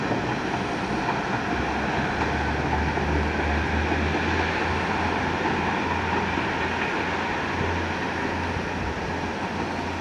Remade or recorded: recorded